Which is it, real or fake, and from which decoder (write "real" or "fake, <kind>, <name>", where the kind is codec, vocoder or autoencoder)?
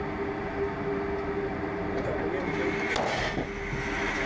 real